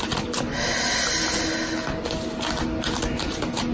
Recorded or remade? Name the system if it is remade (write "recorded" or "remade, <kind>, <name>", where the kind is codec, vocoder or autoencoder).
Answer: recorded